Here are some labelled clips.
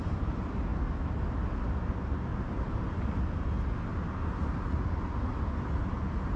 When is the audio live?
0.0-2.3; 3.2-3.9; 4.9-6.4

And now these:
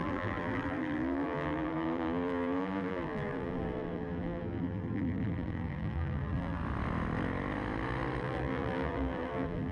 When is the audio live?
6.6-8.2

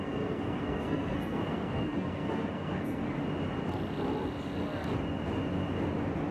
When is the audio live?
3.0-6.3

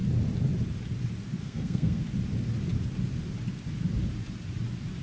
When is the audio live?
0.0-1.4; 2.0-5.0

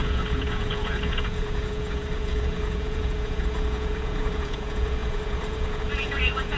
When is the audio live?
none

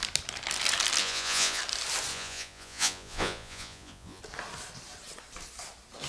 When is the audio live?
0.0-1.0; 1.6-2.1; 4.2-6.1

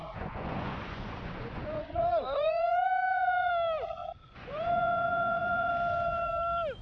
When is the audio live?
3.5-4.0; 5.7-6.8

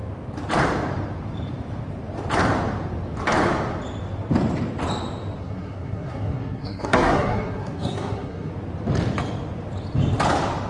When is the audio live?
0.0-5.4; 8.5-10.7